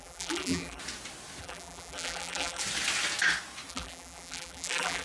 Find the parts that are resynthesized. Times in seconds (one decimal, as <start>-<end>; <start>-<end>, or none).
0.0-0.8; 1.4-2.6; 3.7-5.0